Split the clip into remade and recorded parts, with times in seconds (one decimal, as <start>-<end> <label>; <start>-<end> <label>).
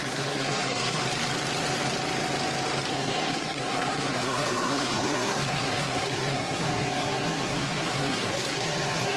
0.0-1.0 remade; 1.0-2.9 recorded; 2.9-9.2 remade